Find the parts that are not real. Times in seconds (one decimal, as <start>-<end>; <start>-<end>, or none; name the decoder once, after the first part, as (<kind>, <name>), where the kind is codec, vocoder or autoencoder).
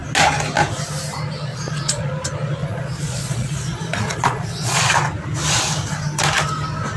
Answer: 1.5-2.0 (vocoder, Vocos); 2.6-4.8